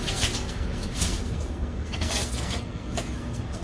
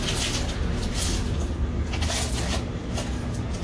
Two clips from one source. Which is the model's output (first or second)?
first